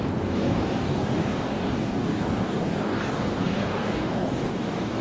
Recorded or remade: remade